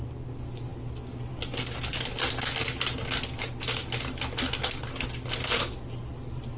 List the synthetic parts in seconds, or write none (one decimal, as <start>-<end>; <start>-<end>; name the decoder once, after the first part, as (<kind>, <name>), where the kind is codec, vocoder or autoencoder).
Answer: none